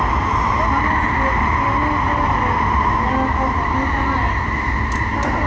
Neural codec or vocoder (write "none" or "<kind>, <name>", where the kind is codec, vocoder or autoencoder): none